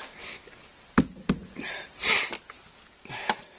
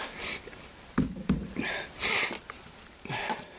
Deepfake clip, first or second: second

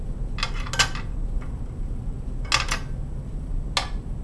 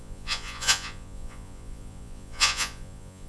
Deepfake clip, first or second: second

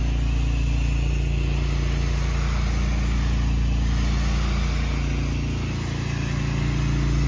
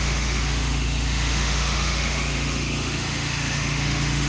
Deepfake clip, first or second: second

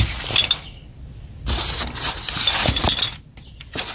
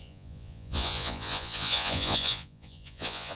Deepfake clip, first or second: second